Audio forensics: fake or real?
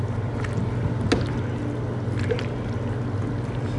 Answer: real